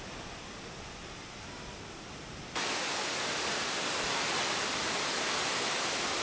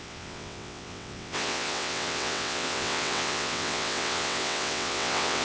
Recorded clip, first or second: first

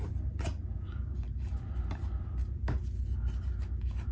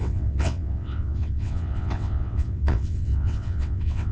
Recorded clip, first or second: first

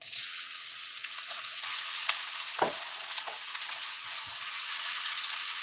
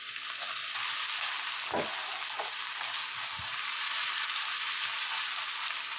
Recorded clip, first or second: second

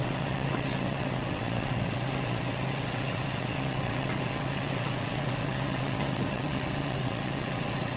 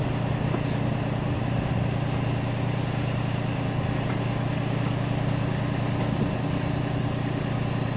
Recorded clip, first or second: second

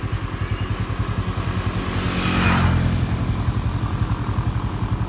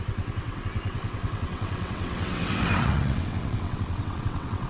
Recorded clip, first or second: first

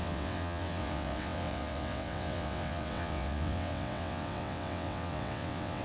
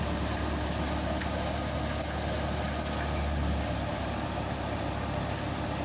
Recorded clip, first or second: second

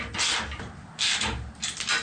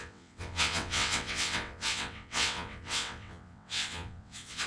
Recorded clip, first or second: first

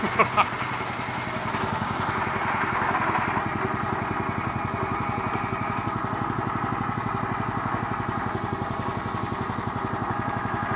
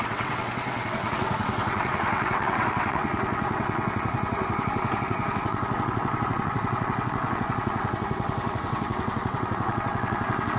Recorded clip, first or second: first